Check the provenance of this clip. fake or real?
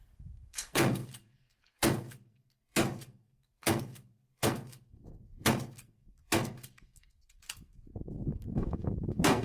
fake